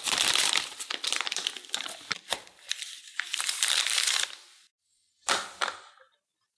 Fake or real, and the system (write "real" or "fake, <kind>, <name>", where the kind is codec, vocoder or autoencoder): fake, vocoder, BigVGAN v2